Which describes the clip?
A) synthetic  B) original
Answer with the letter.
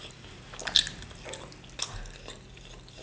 B